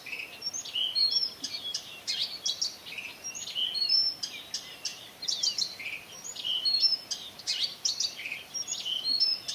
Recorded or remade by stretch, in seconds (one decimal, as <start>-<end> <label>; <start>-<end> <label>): 0.0-1.2 recorded; 1.2-2.1 remade; 2.1-4.9 recorded; 4.9-8.7 remade; 8.7-9.5 recorded